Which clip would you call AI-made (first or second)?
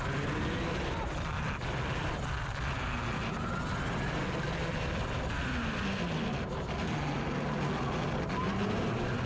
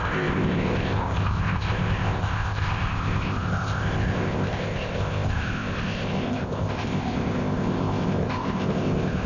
second